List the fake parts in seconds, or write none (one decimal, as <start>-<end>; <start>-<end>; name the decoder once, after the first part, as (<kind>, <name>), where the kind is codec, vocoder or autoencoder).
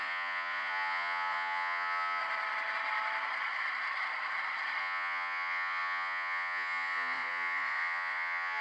0.0-2.2 (vocoder, Vocos); 4.8-8.6